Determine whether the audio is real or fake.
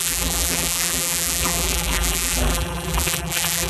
fake